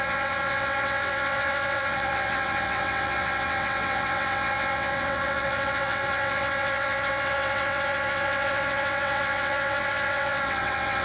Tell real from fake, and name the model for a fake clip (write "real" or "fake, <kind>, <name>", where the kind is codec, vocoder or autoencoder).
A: fake, vocoder, WaveNeXt